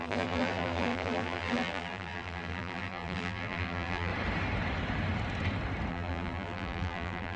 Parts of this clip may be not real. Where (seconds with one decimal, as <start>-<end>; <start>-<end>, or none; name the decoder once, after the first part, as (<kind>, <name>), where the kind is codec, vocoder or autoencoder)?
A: 0.0-4.1 (vocoder, BigVGAN v2); 5.9-7.4